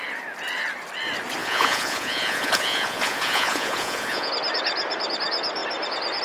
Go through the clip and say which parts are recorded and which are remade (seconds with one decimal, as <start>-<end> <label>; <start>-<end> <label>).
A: 0.0-1.4 recorded; 1.4-4.3 remade; 4.3-6.2 recorded